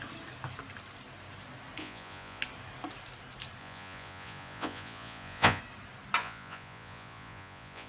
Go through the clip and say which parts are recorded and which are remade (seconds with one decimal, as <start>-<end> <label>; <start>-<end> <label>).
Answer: 0.0-1.8 recorded; 1.8-2.4 remade; 2.4-3.6 recorded; 3.6-5.6 remade; 5.6-6.2 recorded; 6.2-7.9 remade